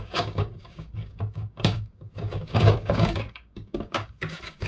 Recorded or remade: remade